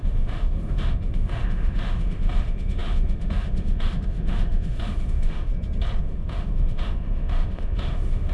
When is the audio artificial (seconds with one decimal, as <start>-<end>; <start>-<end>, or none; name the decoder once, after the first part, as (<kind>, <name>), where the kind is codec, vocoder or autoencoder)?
0.0-5.5 (autoencoder, DAC-VAE); 6.0-8.3